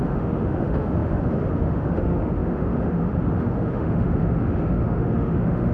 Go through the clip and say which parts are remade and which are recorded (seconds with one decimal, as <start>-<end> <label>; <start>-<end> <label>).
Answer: 0.0-5.7 remade